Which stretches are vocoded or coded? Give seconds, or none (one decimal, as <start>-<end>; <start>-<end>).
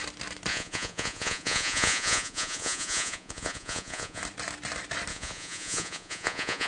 0.5-4.2; 5.1-6.7